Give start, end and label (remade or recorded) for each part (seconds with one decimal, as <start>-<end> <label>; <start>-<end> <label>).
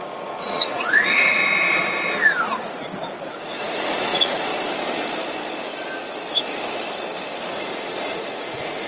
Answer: 0.0-1.4 remade; 1.4-3.2 recorded; 3.2-4.5 remade; 4.5-7.5 recorded; 7.5-8.9 remade